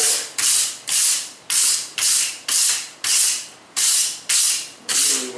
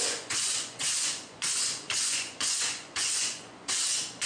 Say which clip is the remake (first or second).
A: second